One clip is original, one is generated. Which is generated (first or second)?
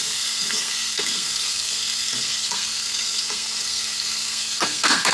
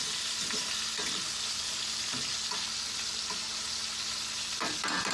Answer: first